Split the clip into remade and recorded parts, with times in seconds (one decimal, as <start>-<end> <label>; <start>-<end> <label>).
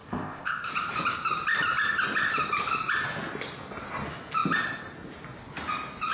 0.0-0.7 remade; 0.7-6.1 recorded